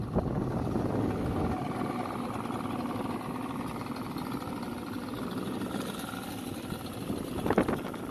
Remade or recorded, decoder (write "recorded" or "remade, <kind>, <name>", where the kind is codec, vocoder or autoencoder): recorded